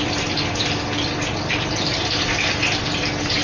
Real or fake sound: real